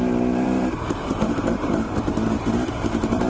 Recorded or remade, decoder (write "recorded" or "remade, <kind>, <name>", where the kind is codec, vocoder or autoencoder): remade, vocoder, BigVGAN v2